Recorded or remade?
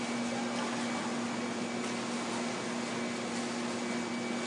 recorded